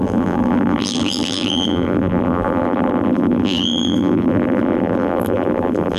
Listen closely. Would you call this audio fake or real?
fake